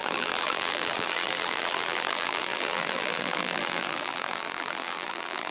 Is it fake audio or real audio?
fake